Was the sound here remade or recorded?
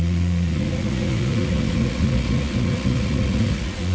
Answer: remade